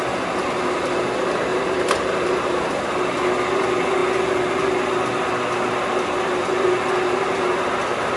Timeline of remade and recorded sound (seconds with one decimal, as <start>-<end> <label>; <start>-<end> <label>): 0.0-0.4 recorded; 0.4-1.0 remade; 1.0-1.5 recorded; 1.5-2.7 remade; 2.7-8.2 recorded